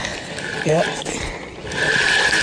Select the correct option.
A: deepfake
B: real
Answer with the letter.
B